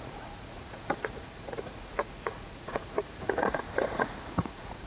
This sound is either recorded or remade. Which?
remade